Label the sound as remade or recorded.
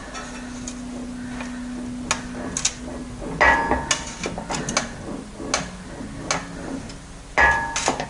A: recorded